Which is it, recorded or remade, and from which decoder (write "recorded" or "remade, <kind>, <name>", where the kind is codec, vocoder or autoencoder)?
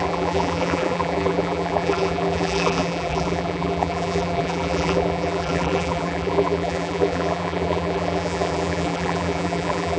remade, vocoder, BigVGAN v2